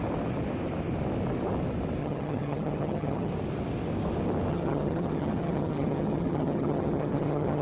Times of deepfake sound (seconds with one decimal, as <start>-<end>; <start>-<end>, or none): 2.0-3.3; 4.5-7.6